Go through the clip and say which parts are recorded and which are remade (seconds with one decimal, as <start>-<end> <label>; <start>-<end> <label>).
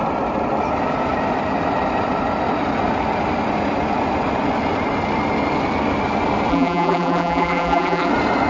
0.0-6.5 recorded; 6.5-8.1 remade; 8.1-8.5 recorded